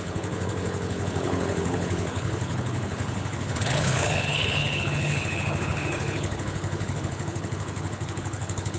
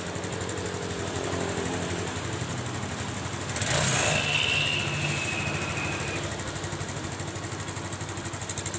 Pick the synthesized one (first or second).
first